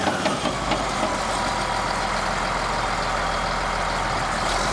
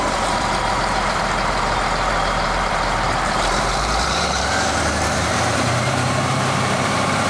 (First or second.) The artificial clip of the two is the second